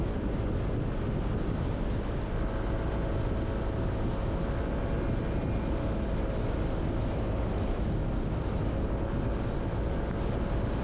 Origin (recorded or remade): recorded